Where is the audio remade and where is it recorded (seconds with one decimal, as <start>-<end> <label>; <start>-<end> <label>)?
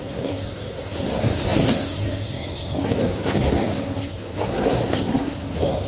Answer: 0.0-5.9 remade